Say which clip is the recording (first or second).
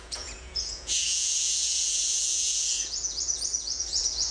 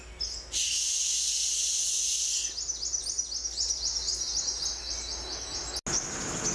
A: second